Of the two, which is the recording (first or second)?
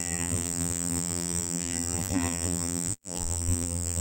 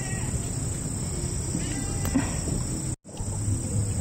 second